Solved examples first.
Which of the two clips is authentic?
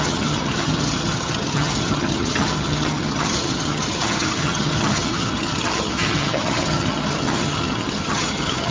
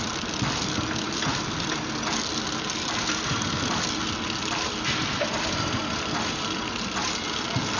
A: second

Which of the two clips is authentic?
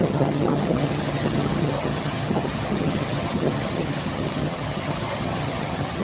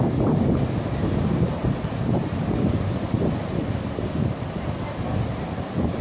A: second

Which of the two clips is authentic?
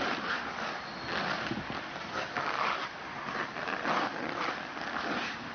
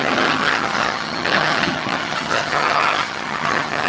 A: first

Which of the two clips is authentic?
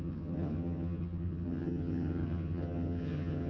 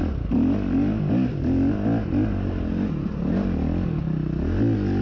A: second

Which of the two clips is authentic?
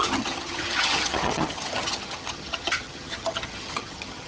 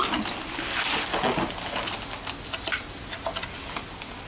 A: second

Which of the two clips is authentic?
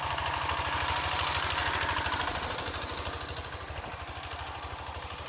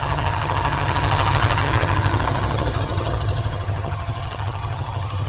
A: first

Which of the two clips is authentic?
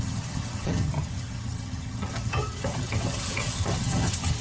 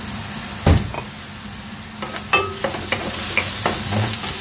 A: second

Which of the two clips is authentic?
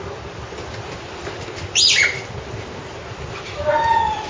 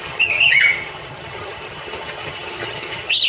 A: first